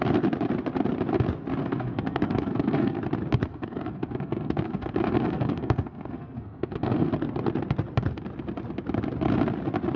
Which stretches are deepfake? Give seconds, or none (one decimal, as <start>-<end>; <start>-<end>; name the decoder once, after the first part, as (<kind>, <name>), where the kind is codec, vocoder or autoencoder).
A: 1.6-3.0 (codec, SNAC); 3.5-7.1